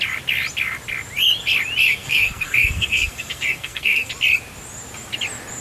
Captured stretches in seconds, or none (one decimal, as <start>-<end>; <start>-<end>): 0.0-1.9; 4.1-5.6